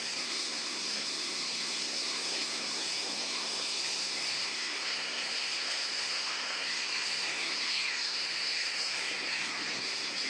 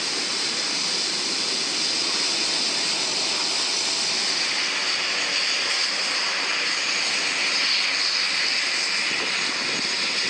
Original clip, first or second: second